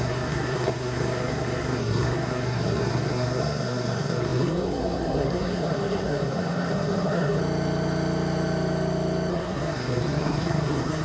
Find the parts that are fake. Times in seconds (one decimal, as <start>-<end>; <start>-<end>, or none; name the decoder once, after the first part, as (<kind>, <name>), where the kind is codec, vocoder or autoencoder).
0.0-7.4 (codec, SNAC); 9.3-11.0